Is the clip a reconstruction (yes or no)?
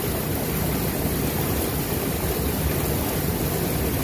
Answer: no